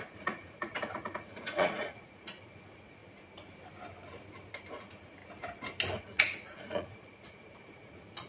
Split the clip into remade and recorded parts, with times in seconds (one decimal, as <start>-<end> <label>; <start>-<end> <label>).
0.0-3.0 remade; 3.0-4.7 recorded; 4.7-5.2 remade; 5.2-6.0 recorded; 6.0-8.3 remade